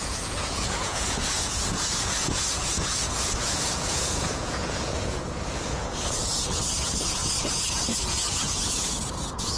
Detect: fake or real fake